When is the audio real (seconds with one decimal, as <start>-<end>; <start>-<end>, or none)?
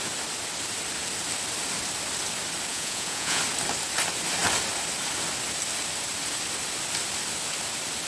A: 0.0-2.7; 3.4-8.1